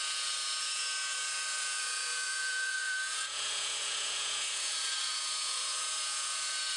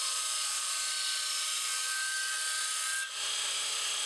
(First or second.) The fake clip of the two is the first